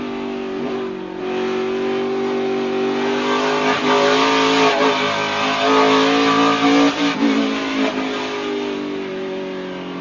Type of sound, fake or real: real